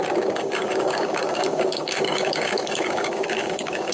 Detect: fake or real fake